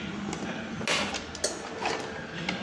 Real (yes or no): yes